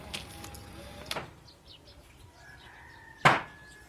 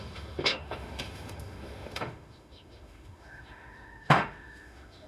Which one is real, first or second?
first